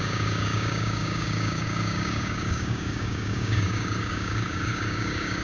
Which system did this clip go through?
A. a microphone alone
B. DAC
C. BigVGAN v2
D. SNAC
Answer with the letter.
B